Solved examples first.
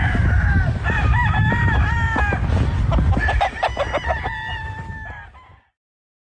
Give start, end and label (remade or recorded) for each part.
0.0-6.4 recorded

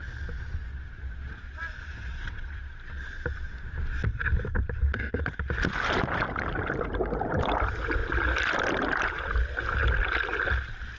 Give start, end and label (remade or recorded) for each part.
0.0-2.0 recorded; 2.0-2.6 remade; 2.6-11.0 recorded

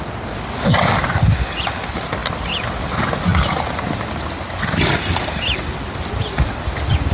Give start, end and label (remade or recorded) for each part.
0.0-7.1 recorded

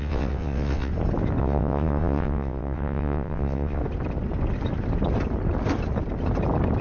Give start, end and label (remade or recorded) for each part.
0.0-0.9 remade; 0.9-1.4 recorded; 1.4-3.8 remade; 3.8-6.8 recorded